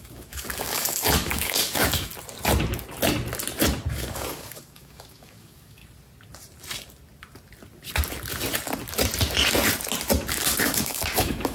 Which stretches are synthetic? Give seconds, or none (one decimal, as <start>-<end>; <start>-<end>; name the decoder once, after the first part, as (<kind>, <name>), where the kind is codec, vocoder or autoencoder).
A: 0.0-2.1 (codec, DAC); 3.9-5.8; 10.3-11.5